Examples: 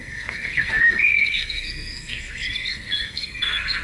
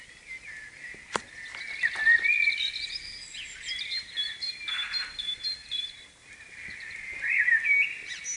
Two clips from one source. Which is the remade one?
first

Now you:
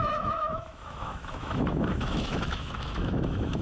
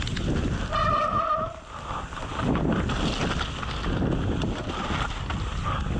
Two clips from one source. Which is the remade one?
first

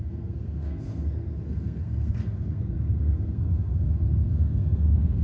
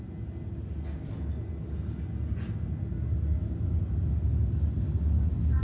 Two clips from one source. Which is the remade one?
first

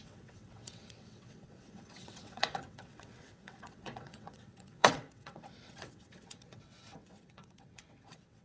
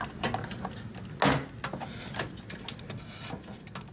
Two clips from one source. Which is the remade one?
first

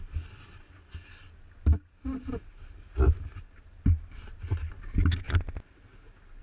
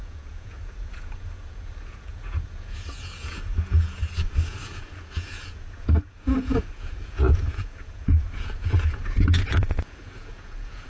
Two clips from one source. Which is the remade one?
second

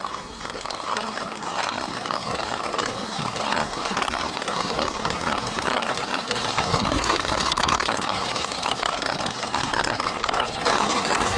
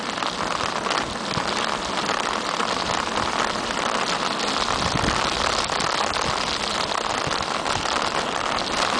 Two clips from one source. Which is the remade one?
first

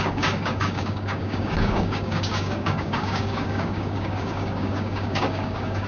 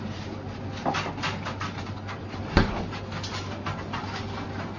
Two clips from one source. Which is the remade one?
first